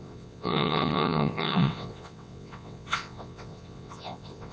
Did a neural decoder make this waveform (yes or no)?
yes